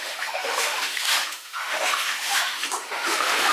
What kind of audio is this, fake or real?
fake